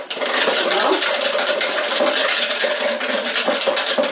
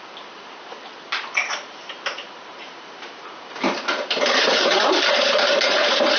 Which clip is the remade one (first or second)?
second